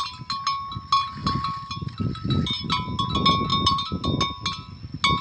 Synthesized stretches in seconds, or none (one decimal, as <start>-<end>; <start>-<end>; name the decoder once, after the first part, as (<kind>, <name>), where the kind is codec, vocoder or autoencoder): none